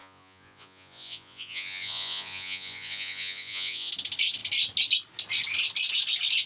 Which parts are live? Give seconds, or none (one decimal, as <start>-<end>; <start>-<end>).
3.9-6.5